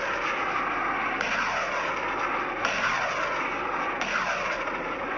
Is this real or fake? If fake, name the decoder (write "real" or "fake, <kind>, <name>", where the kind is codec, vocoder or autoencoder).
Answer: real